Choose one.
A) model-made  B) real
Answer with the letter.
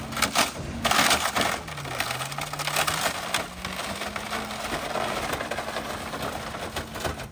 B